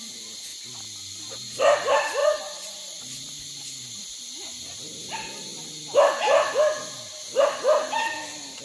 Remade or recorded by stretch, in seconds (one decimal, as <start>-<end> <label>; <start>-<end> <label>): 0.0-2.2 recorded; 2.2-3.0 remade; 3.0-8.6 recorded

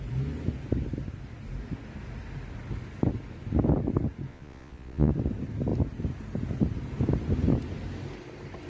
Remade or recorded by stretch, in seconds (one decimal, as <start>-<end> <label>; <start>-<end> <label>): 0.0-4.3 recorded; 4.3-5.1 remade; 5.1-8.7 recorded